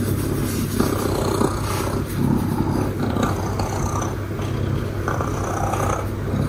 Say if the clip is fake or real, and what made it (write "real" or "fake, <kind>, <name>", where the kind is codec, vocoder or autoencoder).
real